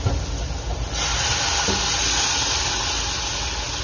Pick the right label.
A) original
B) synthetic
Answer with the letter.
A